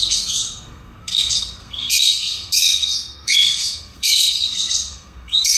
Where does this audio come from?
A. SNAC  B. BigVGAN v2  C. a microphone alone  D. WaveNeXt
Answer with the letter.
A